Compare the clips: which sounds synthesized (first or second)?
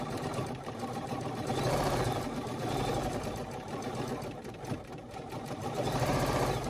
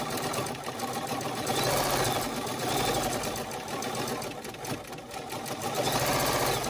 first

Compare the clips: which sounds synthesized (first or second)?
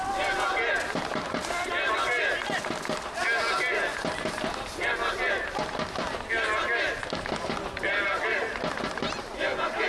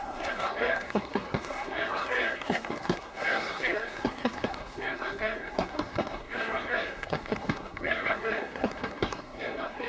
second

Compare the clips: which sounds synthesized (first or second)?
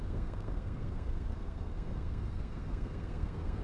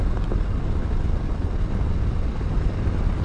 first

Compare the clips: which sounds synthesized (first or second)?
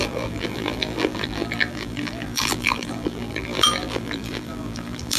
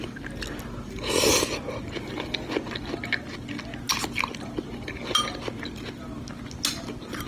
first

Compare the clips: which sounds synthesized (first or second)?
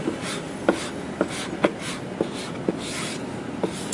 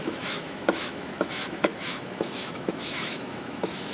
second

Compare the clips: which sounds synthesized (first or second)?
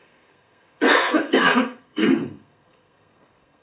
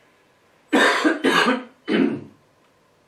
first